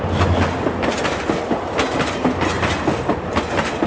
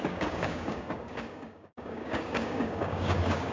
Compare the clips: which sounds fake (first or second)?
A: second